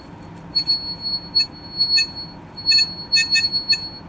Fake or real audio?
real